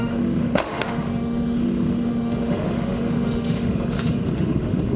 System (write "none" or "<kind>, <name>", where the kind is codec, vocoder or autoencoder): autoencoder, DAC-VAE